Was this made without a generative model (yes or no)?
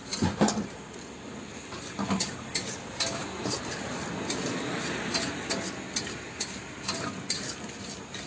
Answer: yes